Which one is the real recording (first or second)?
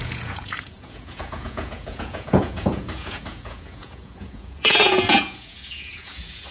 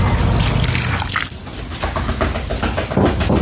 second